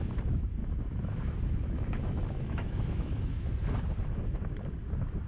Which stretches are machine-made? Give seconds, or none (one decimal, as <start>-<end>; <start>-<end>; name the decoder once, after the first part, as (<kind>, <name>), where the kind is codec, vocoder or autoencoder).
0.6-3.8 (autoencoder, DAC-VAE)